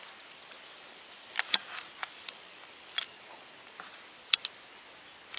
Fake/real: real